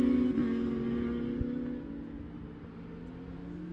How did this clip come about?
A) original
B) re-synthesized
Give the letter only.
A